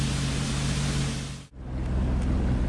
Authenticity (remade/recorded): recorded